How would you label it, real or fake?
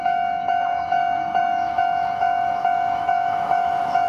fake